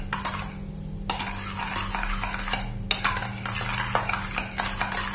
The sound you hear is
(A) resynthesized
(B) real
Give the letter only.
B